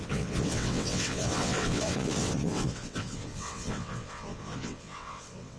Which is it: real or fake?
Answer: fake